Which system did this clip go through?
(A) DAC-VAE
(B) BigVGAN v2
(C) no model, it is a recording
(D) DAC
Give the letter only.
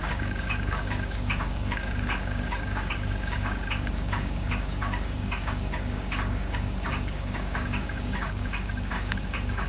D